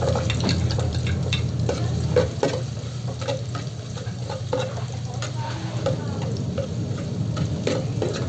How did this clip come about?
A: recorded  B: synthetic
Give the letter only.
B